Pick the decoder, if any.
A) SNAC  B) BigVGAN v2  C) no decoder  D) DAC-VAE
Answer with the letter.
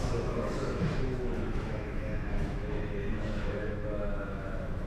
D